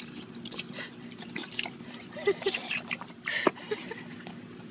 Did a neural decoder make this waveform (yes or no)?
yes